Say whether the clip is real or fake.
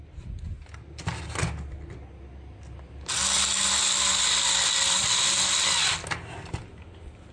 real